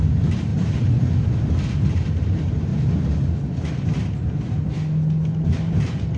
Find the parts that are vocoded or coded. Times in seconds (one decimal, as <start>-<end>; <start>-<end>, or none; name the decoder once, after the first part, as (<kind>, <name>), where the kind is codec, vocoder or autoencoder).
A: 0.5-1.1 (vocoder, BigVGAN v2)